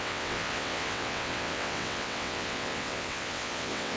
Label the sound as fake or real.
fake